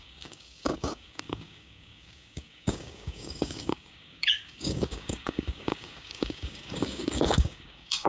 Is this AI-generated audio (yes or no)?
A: yes